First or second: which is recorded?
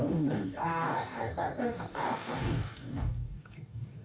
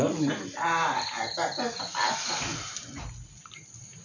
second